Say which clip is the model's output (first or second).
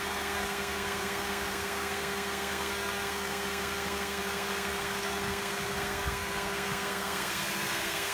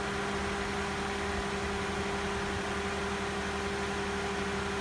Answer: first